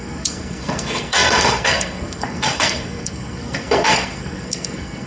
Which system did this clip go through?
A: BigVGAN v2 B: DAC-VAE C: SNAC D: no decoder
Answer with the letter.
C